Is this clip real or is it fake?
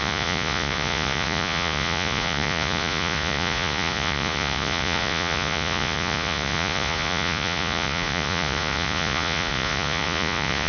fake